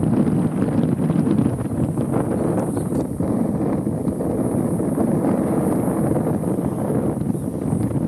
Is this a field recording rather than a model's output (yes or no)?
yes